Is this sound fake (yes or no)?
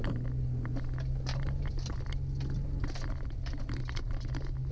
no